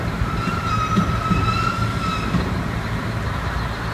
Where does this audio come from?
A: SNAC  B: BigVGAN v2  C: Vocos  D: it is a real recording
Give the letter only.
B